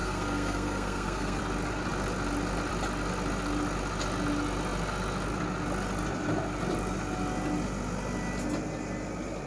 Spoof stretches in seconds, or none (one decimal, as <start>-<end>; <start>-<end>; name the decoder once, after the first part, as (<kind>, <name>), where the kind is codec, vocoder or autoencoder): 0.0-1.4 (codec, SNAC)